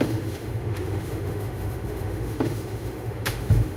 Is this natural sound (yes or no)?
no